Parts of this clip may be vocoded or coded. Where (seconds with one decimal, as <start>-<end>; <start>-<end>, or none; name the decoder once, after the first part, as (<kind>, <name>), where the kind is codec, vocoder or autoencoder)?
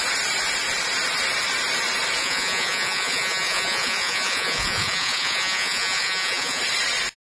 2.2-6.6 (vocoder, Vocos)